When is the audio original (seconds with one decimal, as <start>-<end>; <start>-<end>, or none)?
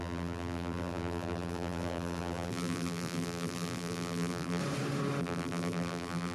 4.6-5.2